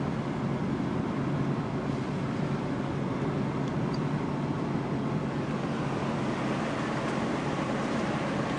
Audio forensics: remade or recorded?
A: recorded